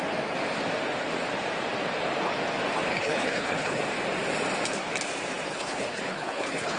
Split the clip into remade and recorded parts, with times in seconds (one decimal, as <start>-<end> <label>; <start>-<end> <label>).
0.0-2.9 recorded; 2.9-3.8 remade; 3.8-5.5 recorded; 5.5-6.8 remade